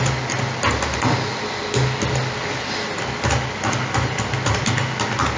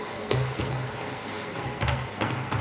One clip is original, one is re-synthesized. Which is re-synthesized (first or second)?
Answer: second